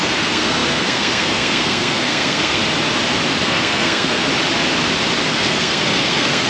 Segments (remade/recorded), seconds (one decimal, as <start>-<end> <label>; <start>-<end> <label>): 0.0-2.6 remade; 2.6-3.4 recorded; 3.4-4.3 remade; 4.3-5.3 recorded; 5.3-6.5 remade

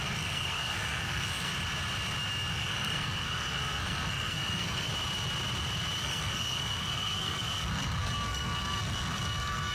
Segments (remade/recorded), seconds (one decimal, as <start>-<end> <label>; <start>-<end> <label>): 0.0-1.5 remade; 1.5-2.5 recorded; 2.5-4.9 remade; 4.9-6.0 recorded; 6.0-9.7 remade

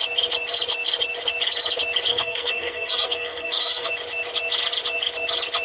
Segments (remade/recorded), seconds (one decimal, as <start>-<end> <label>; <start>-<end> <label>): 0.0-2.1 recorded; 2.1-3.9 remade; 3.9-5.6 recorded

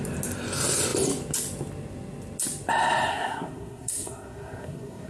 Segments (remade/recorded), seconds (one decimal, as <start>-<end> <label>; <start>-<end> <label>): 0.0-3.1 recorded; 3.1-5.1 remade

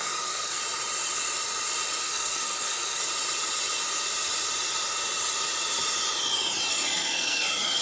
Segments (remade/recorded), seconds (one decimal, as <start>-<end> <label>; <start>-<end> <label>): 0.0-0.6 remade; 0.6-2.0 recorded; 2.0-3.0 remade; 3.0-6.7 recorded; 6.7-7.8 remade